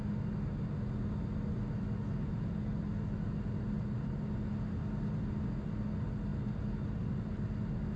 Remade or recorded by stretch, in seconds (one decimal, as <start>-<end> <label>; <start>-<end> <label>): 0.0-8.0 recorded

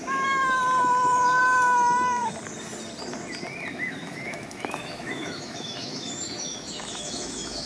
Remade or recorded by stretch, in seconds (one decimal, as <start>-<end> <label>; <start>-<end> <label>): 0.0-0.6 remade; 0.6-1.4 recorded; 1.4-2.2 remade; 2.2-3.7 recorded; 3.7-7.7 remade

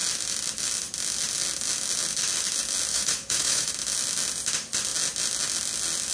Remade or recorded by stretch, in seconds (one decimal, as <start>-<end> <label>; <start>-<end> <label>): 0.0-2.9 recorded; 2.9-3.7 remade; 3.7-6.1 recorded

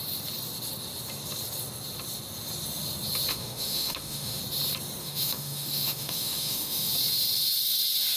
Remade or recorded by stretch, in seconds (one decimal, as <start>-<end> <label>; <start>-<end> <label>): 0.0-3.3 recorded; 3.3-4.4 remade; 4.4-5.0 recorded; 5.0-6.9 remade; 6.9-8.2 recorded